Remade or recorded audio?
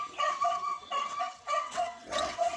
remade